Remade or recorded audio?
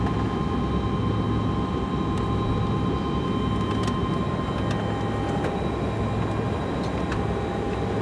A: recorded